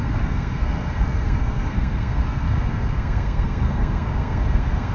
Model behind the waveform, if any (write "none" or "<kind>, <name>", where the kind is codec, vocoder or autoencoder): codec, SNAC